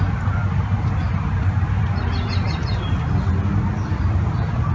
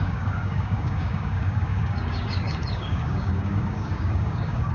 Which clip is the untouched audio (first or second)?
first